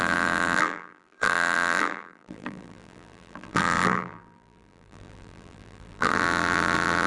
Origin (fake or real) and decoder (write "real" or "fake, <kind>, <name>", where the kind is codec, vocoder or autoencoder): fake, vocoder, BigVGAN v2